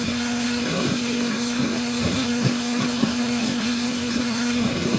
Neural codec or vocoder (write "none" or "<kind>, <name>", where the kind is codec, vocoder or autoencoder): codec, SNAC